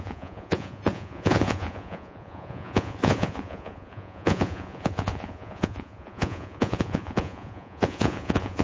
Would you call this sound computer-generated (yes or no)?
yes